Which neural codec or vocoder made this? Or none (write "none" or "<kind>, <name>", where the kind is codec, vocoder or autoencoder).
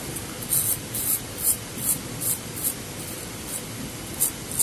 none